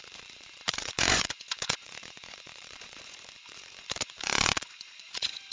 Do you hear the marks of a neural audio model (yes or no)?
yes